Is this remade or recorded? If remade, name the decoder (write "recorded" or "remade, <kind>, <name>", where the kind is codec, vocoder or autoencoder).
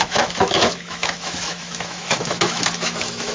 remade, autoencoder, DAC-VAE